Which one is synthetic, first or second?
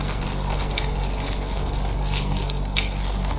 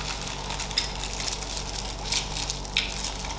first